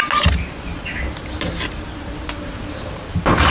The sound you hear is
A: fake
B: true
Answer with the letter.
B